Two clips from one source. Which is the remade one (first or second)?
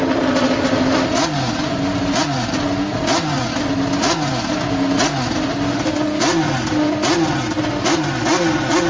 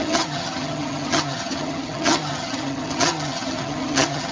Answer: second